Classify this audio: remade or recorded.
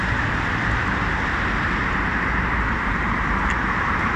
remade